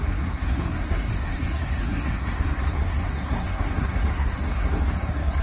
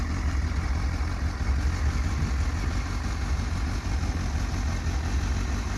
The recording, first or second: second